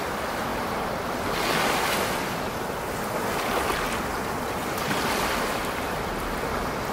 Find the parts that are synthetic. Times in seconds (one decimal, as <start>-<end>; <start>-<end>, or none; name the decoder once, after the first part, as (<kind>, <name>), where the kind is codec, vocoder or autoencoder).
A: 0.5-1.1 (vocoder, BigVGAN v2)